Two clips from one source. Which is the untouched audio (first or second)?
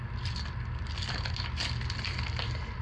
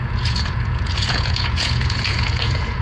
first